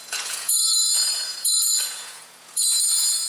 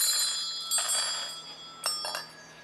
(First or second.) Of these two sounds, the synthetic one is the first